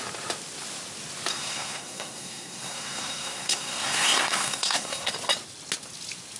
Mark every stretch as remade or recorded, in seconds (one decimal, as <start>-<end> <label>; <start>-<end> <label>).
0.0-1.3 recorded; 1.3-5.1 remade; 5.1-6.4 recorded